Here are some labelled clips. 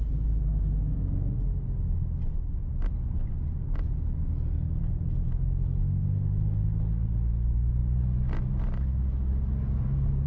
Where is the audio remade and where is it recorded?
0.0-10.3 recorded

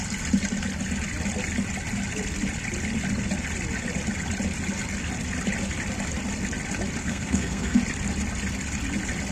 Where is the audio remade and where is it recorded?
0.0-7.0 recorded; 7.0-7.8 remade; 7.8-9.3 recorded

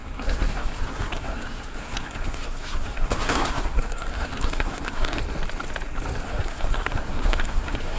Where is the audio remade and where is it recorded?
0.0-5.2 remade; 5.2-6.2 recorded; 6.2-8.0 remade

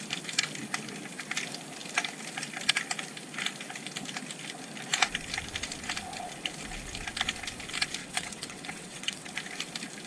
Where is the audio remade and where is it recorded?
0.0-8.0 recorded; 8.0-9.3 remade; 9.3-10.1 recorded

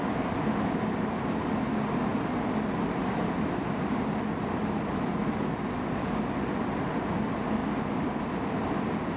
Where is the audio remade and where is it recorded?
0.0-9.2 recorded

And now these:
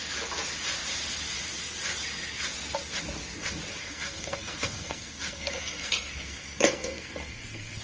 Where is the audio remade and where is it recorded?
0.0-3.8 recorded; 3.8-7.8 remade

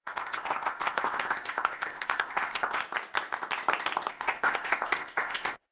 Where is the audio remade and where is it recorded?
0.0-2.8 remade; 2.8-4.1 recorded; 4.1-5.7 remade